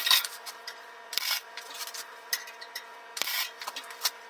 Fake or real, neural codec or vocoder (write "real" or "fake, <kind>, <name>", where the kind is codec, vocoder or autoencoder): fake, vocoder, BigVGAN v2